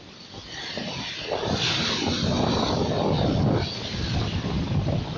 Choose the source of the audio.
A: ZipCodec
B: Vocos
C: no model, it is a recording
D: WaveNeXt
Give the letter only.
C